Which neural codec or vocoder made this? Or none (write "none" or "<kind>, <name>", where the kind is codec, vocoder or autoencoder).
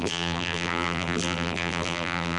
vocoder, BigVGAN v2